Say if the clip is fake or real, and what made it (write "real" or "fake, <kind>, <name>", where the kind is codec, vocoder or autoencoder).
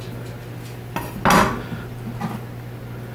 real